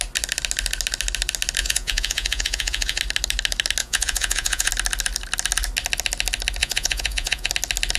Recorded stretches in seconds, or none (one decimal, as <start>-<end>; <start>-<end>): 0.0-1.6; 3.0-3.8; 4.7-6.6; 7.5-8.0